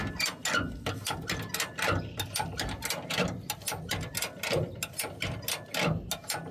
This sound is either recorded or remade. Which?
recorded